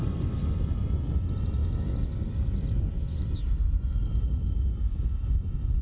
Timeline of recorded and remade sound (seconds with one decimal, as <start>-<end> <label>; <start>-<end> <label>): 0.0-5.8 recorded